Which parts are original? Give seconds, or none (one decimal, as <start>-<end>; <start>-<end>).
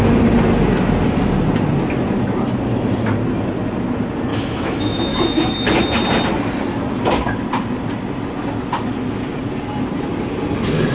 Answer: 0.0-4.3; 5.8-10.9